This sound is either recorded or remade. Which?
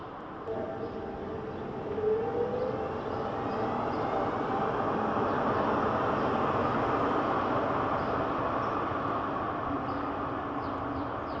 recorded